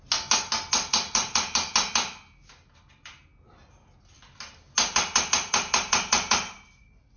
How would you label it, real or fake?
real